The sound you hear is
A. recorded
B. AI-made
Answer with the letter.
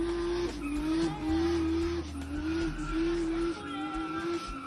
A